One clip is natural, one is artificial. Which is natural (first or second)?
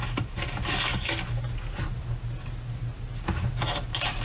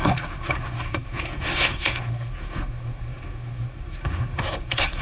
first